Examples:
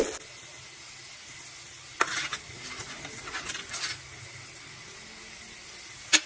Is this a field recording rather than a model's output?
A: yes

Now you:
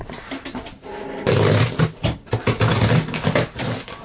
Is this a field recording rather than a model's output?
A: yes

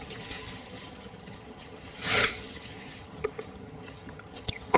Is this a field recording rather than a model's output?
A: no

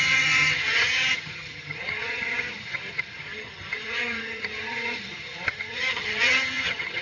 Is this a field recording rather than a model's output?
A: no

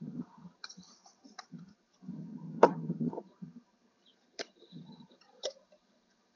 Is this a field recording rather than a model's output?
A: no